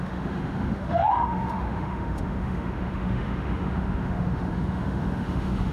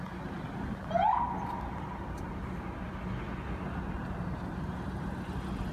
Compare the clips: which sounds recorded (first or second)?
second